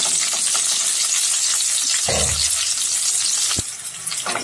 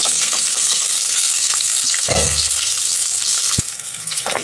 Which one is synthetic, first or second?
second